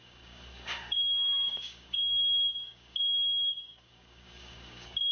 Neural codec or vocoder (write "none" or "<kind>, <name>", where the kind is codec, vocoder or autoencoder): codec, DAC